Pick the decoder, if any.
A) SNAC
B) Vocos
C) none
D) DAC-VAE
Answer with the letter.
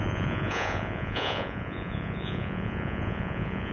B